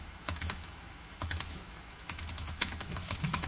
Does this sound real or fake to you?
fake